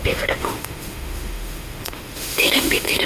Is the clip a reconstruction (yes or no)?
yes